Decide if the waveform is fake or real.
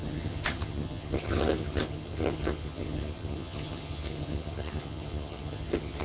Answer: fake